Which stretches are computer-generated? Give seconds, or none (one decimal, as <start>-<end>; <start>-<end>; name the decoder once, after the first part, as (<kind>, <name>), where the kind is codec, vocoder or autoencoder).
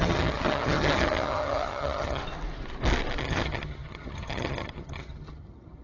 0.0-2.2 (vocoder, HiFi-GAN); 3.2-5.8